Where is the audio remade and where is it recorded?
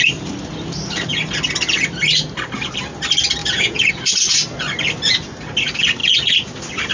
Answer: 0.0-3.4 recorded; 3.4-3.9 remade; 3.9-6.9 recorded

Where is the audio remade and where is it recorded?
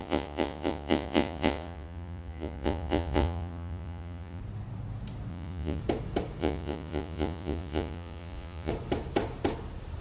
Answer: 0.0-4.4 remade; 4.4-5.3 recorded; 5.3-5.8 remade; 5.8-6.4 recorded; 6.4-8.7 remade; 8.7-10.0 recorded